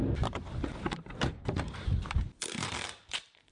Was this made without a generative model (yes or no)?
no